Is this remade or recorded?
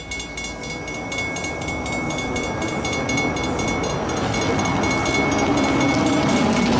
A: recorded